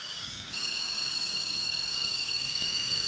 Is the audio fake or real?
fake